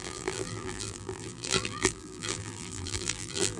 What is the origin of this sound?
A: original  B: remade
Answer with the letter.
B